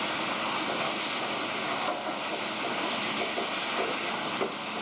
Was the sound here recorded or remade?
recorded